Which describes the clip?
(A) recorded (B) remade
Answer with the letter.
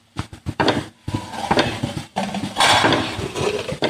B